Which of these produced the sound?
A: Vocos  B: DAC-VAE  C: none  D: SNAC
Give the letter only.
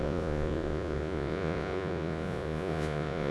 A